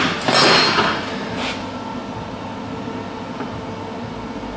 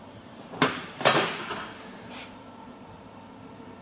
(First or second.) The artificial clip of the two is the second